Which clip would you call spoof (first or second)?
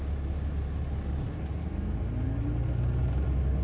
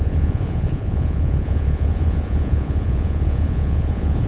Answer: second